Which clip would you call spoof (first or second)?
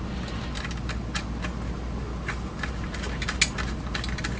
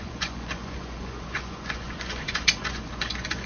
second